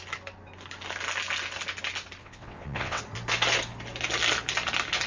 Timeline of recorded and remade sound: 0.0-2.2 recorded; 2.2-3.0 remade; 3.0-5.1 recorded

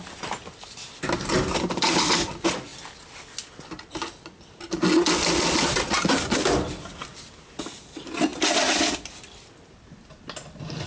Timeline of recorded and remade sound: 0.0-10.9 recorded

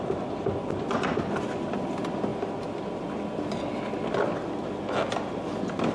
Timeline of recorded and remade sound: 0.0-5.9 recorded

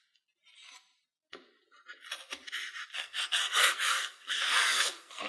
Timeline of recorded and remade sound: 0.0-3.0 recorded; 3.0-5.3 remade

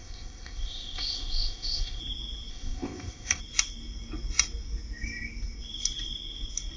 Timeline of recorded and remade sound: 0.0-2.0 remade; 2.0-2.5 recorded; 2.5-3.4 remade; 3.4-6.8 recorded